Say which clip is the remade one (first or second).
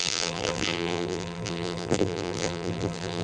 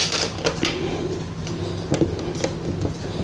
first